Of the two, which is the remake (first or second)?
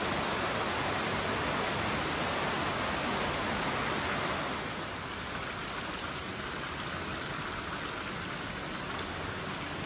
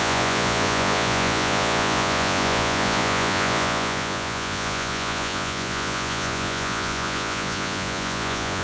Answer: second